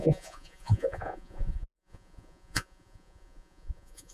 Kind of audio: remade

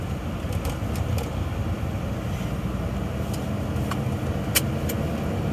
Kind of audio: recorded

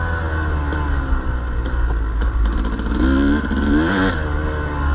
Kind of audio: recorded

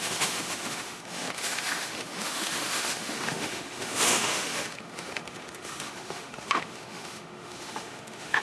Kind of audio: remade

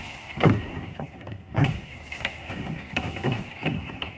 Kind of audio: remade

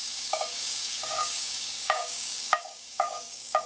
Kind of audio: remade